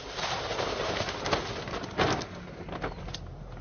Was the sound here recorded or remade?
recorded